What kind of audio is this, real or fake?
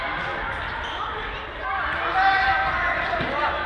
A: real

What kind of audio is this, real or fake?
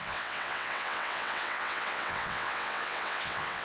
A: fake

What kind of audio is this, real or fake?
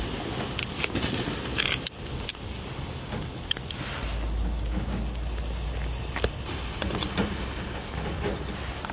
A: real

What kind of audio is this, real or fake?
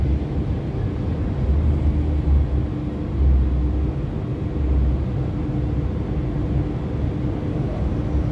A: real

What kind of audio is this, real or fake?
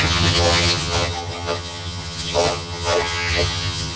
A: fake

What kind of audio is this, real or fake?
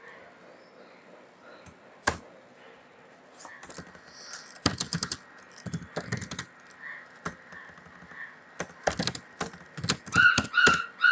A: real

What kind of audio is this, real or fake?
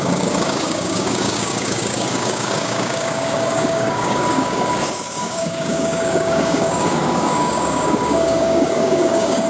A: fake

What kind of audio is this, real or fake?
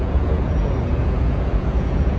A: fake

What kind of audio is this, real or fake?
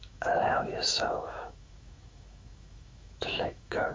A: fake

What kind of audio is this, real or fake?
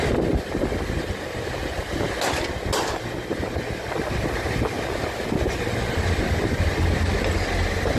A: real